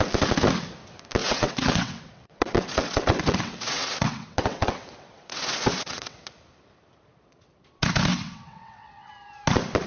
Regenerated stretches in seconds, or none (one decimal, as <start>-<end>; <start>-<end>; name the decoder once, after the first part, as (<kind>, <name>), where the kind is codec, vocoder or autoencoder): 1.2-6.3 (vocoder, WaveNeXt); 8.1-9.1